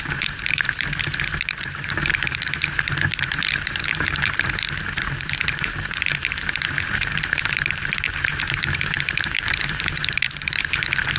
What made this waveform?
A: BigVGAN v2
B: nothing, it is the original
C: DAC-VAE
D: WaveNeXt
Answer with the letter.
A